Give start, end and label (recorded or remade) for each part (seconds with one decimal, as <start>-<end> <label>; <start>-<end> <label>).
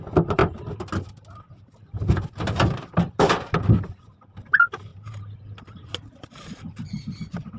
0.0-7.6 recorded